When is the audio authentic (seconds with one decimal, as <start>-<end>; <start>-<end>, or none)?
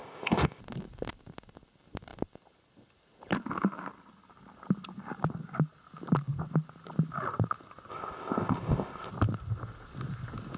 0.6-7.9; 9.1-10.6